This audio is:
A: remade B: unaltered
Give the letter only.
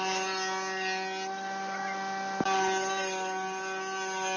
B